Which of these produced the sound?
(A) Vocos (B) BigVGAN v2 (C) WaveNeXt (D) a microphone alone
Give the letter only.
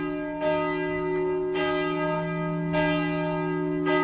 D